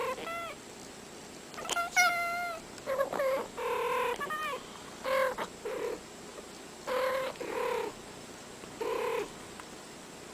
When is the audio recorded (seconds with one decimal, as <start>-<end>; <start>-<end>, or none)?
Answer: 0.0-10.3